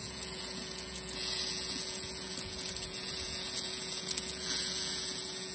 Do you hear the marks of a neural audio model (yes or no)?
yes